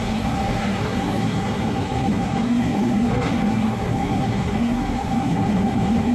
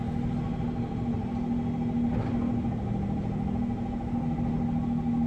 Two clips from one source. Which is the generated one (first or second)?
first